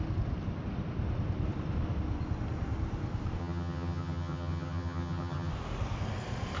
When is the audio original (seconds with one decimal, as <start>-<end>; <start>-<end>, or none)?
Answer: 0.0-3.4; 5.5-6.6